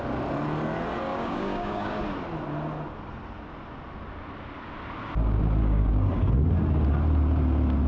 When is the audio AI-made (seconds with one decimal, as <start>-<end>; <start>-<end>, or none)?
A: 1.1-2.0; 5.6-6.2